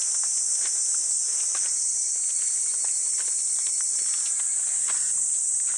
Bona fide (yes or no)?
yes